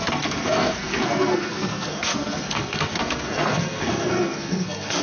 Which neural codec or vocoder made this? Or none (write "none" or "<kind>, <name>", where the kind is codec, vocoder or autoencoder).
codec, SNAC